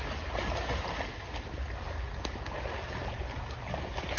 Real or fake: real